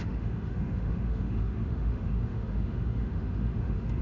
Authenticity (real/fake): fake